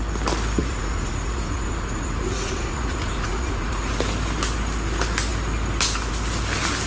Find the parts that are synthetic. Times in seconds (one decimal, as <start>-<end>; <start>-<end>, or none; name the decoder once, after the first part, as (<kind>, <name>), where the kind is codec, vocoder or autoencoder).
0.6-4.0 (vocoder, Vocos)